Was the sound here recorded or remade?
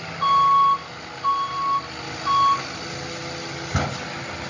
recorded